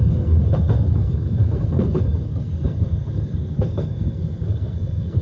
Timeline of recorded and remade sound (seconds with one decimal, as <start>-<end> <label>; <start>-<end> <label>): 0.0-5.2 remade